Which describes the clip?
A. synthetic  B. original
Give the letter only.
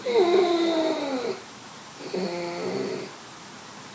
B